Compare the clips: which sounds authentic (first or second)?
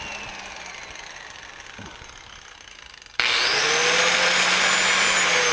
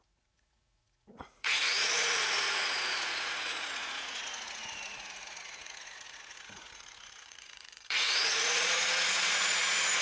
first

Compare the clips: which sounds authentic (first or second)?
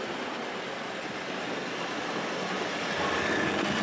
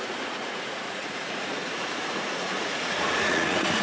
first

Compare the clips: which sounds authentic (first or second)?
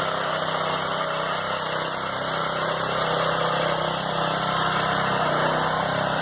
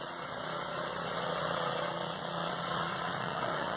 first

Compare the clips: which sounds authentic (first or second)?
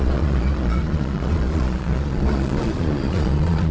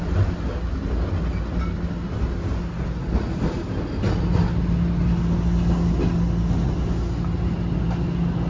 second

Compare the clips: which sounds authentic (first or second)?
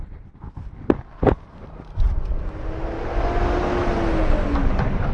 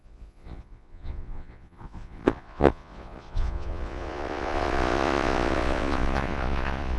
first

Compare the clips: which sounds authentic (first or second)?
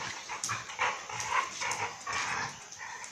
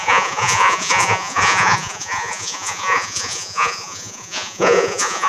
first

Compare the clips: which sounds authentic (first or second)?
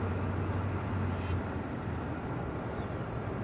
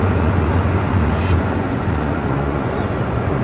first